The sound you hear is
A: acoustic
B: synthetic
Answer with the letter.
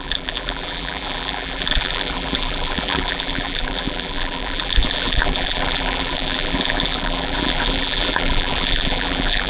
B